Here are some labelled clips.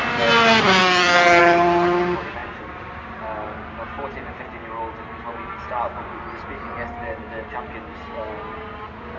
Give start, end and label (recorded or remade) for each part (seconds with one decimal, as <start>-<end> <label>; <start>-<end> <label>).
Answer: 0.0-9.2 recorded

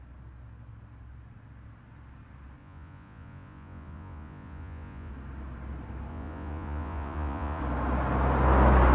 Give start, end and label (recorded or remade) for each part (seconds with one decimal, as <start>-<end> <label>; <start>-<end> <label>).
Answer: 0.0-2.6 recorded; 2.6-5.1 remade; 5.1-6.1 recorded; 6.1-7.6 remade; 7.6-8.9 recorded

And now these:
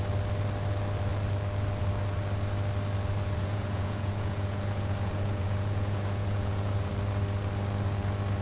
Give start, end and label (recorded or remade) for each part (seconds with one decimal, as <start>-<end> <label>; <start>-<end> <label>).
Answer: 0.0-3.4 recorded; 3.4-6.9 remade; 6.9-8.4 recorded